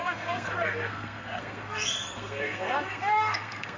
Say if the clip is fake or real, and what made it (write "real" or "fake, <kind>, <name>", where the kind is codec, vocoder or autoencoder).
fake, codec, SNAC